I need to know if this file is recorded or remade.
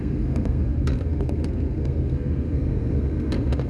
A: remade